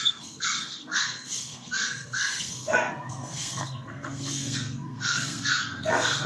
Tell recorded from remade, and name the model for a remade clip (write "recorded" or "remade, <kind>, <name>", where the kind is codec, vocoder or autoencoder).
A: remade, codec, SNAC